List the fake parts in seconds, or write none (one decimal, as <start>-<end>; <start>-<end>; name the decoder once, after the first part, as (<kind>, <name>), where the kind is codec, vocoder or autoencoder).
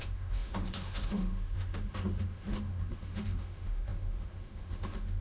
0.0-5.2 (autoencoder, DAC-VAE)